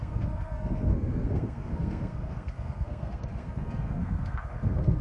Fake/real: fake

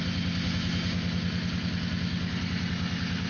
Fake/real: real